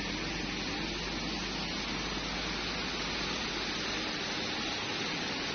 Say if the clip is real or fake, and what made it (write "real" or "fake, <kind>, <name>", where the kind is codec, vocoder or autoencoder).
real